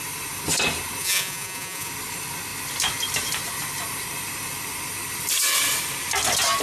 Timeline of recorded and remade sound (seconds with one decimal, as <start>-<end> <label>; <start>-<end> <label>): 0.0-1.0 recorded; 1.0-1.9 remade; 1.9-6.6 recorded

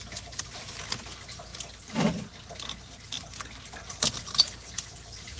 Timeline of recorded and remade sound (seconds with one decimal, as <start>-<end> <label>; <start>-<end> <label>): 0.0-5.4 recorded